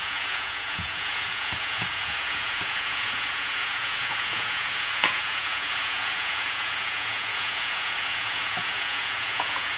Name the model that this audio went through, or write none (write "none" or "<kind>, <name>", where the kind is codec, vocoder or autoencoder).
vocoder, Vocos